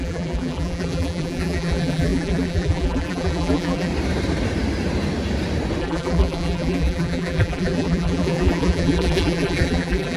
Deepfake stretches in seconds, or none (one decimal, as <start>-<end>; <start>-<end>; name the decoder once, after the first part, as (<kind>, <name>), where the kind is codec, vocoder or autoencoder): 0.0-3.9 (vocoder, BigVGAN v2); 5.8-10.2